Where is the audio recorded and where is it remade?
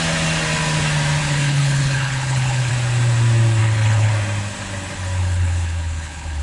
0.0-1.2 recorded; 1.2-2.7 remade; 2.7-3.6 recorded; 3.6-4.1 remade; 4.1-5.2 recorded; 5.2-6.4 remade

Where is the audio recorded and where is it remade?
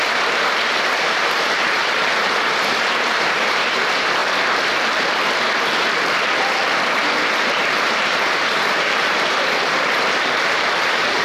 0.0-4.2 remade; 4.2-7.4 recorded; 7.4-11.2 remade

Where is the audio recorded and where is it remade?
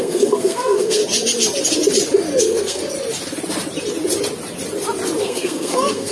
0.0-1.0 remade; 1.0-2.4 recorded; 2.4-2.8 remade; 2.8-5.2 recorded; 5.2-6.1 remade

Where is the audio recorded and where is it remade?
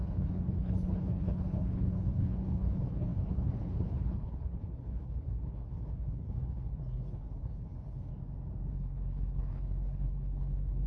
0.0-8.1 remade; 8.1-8.7 recorded; 8.7-10.9 remade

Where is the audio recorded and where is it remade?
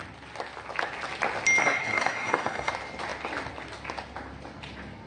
0.0-1.6 recorded; 1.6-2.7 remade; 2.7-5.1 recorded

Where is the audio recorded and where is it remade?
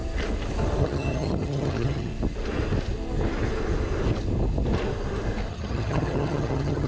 0.0-0.8 recorded; 0.8-2.1 remade; 2.1-5.5 recorded; 5.5-6.9 remade